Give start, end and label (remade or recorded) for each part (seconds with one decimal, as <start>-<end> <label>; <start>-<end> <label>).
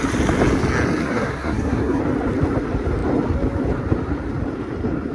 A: 0.0-1.0 recorded; 1.0-2.0 remade; 2.0-5.1 recorded